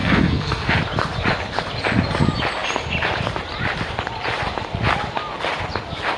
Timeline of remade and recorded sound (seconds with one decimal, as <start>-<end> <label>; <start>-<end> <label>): 0.0-0.8 remade; 0.8-6.2 recorded